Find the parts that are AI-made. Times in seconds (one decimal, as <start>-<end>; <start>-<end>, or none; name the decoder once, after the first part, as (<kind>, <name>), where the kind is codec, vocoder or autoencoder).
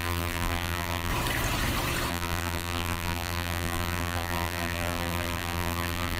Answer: 0.0-1.1 (vocoder, BigVGAN v2); 2.1-6.2